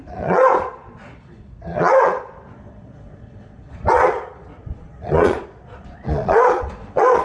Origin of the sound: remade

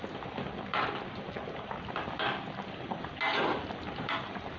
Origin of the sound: recorded